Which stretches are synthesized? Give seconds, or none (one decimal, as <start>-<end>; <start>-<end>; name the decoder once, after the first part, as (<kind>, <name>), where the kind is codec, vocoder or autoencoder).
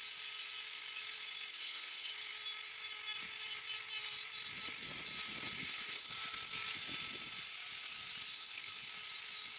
1.5-2.1 (codec, HILCodec); 5.6-6.1; 8.3-8.9